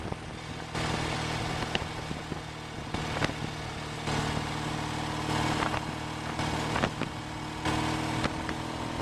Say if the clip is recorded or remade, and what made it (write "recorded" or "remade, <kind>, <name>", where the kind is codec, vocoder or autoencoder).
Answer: recorded